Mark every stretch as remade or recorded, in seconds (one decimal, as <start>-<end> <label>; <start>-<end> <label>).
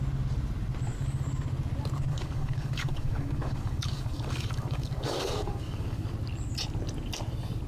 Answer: 0.0-2.1 recorded; 2.1-6.1 remade; 6.1-7.7 recorded